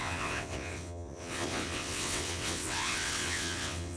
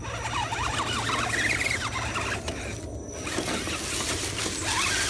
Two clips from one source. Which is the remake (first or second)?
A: first